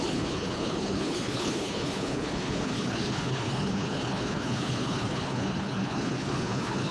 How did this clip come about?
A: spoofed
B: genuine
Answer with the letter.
A